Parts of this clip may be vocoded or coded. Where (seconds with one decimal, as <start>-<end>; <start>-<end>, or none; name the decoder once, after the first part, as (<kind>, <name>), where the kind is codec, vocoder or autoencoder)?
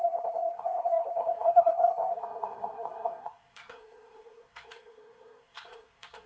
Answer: 0.0-6.3 (codec, SNAC)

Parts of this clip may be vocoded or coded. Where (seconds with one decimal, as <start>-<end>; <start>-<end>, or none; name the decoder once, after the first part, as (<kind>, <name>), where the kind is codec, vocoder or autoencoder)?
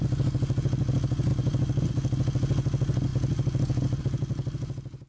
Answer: none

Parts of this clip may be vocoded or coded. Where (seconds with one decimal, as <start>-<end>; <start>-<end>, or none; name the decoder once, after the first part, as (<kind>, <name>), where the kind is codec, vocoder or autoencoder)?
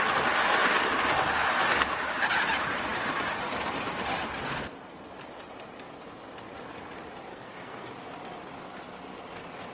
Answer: 7.3-7.9 (codec, SNAC)